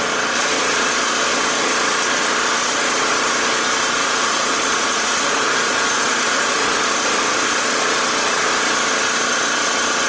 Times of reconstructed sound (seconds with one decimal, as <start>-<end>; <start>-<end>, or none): 4.0-6.8